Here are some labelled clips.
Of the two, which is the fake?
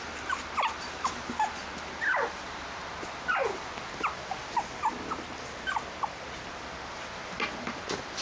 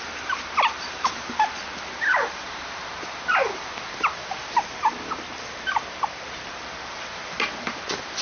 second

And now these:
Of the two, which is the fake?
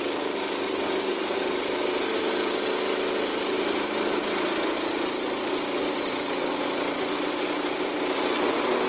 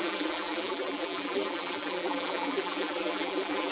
second